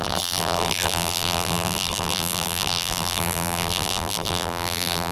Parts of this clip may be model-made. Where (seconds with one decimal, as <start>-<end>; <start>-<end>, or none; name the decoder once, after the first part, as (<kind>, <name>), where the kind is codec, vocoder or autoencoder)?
0.0-5.1 (vocoder, BigVGAN v2)